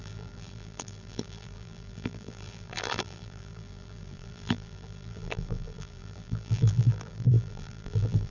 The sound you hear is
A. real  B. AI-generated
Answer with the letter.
B